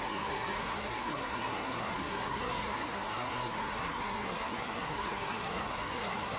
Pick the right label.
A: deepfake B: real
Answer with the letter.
A